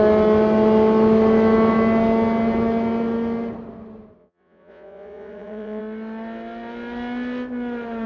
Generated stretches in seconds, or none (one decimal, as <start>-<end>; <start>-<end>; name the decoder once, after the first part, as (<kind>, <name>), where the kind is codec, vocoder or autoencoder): 4.2-5.8 (vocoder, Vocos)